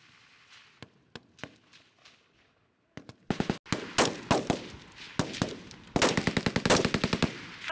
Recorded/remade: recorded